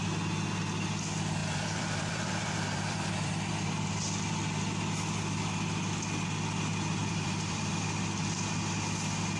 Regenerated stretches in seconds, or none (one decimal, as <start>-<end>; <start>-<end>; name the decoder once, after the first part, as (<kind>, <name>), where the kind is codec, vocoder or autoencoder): 1.4-3.5 (vocoder, BigVGAN v2); 7.0-7.7